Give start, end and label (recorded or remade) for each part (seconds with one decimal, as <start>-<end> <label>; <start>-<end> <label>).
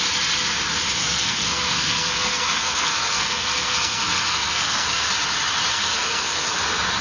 0.0-1.0 recorded; 1.0-5.1 remade; 5.1-5.7 recorded; 5.7-6.6 remade; 6.6-7.0 recorded